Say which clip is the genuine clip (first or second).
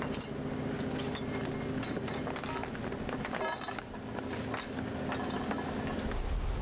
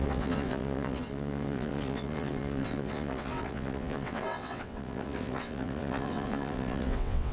first